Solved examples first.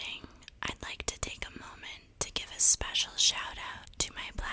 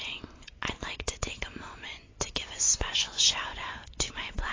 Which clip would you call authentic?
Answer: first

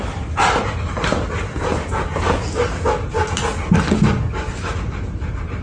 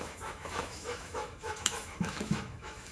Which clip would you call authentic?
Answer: first